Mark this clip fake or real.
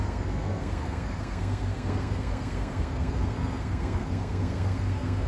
fake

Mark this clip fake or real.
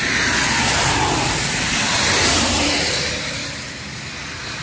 real